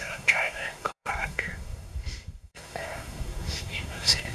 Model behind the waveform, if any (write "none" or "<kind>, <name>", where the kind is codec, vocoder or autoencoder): codec, SNAC